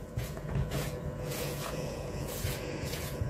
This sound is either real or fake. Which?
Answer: fake